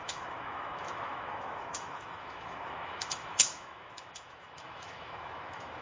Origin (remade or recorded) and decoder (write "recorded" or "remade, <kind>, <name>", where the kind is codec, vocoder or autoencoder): remade, autoencoder, DAC-VAE